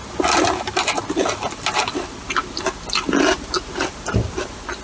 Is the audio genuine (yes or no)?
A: yes